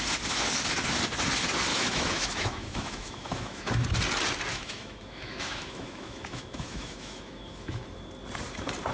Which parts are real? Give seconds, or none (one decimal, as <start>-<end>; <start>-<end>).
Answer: 0.0-1.7; 3.7-4.5; 7.8-8.9